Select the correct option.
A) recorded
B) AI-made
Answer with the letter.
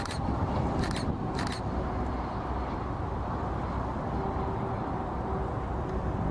A